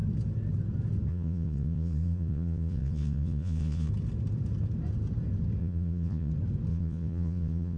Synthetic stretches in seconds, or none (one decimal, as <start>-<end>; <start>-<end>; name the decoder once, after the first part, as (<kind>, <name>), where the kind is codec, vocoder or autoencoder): 1.1-3.9 (vocoder, Vocos); 5.6-6.3; 6.7-7.8